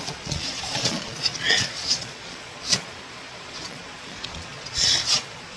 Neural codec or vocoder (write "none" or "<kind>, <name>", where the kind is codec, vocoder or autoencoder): vocoder, Vocos